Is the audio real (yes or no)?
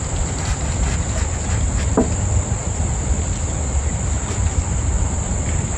yes